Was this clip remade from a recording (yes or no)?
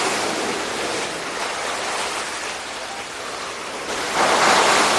no